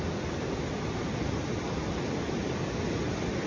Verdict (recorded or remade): recorded